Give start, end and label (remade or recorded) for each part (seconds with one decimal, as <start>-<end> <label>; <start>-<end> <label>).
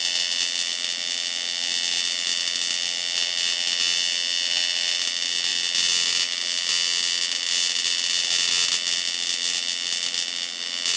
0.0-11.0 recorded